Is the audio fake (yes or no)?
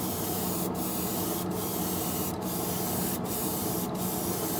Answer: yes